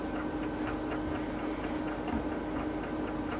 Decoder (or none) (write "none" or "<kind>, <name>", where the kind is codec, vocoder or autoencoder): none